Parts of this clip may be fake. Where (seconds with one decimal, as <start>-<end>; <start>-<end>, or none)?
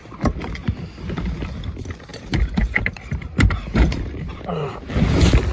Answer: 2.1-4.9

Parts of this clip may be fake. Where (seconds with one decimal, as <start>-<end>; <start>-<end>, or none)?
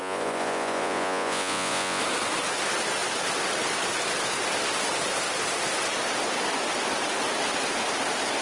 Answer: 0.0-2.0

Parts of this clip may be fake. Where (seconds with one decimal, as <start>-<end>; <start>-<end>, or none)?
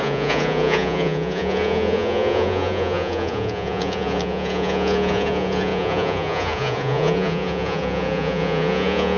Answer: 0.0-9.2